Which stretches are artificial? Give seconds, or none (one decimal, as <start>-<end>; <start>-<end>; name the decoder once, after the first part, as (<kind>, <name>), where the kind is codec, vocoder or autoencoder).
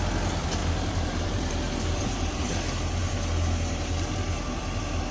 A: 0.6-2.5 (vocoder, BigVGAN v2)